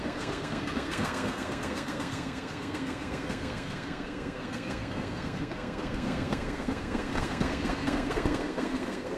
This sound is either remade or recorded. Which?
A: remade